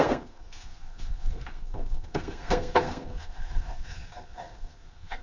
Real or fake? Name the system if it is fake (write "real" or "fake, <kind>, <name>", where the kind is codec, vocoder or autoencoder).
fake, codec, SNAC